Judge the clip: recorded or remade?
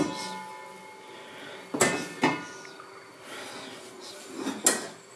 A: recorded